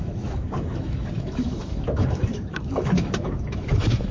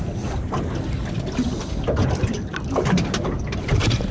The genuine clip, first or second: second